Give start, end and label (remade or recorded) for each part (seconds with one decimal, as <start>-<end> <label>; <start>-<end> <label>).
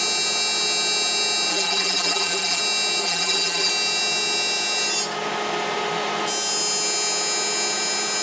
0.0-1.5 recorded; 1.5-2.6 remade; 2.6-3.0 recorded; 3.0-3.7 remade; 3.7-8.2 recorded